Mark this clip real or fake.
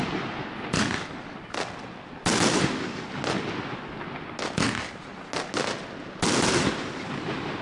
real